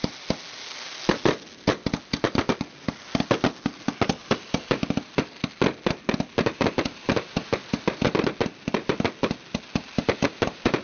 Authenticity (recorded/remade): recorded